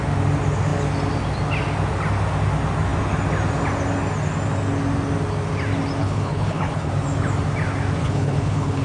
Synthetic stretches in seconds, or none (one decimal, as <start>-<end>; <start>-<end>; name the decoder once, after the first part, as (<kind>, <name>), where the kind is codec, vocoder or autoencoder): 6.0-6.9 (codec, HILCodec); 8.0-8.8